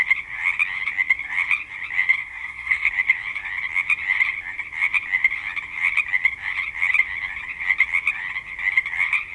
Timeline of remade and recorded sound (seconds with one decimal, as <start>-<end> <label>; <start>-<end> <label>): 0.0-2.2 recorded; 2.2-2.9 remade; 2.9-9.3 recorded